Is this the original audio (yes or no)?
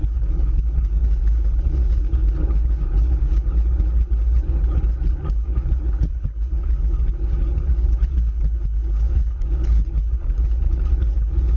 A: no